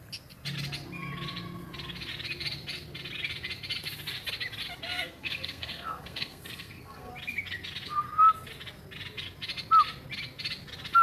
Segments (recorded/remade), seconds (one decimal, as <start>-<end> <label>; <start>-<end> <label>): 0.0-4.9 recorded; 4.9-7.1 remade; 7.1-11.0 recorded